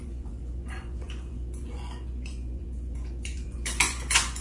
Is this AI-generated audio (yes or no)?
yes